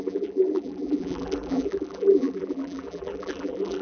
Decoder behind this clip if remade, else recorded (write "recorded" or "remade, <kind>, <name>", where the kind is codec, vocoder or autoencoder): remade, vocoder, BigVGAN v2